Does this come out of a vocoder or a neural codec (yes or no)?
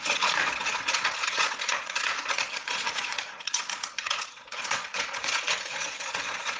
yes